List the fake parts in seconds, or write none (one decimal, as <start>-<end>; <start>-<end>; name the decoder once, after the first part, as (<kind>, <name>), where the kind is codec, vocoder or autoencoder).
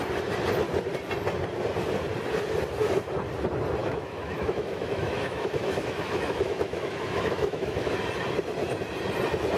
3.8-8.0 (autoencoder, DAC-VAE)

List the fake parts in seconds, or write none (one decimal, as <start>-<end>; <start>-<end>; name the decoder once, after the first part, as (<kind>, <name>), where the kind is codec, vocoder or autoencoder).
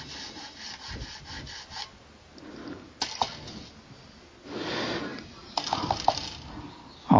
none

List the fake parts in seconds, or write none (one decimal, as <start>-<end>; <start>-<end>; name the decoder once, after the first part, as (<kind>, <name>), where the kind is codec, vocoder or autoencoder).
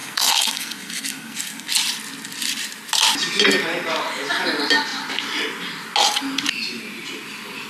0.0-1.7 (codec, SNAC)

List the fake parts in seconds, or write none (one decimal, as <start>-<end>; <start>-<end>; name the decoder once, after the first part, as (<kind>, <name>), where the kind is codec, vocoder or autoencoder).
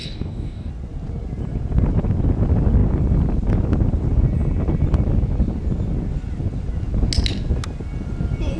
0.0-0.7 (codec, DAC)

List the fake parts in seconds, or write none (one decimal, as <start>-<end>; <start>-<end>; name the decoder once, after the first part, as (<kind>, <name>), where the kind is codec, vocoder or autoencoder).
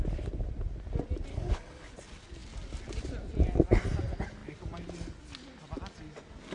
1.3-1.9 (codec, HILCodec)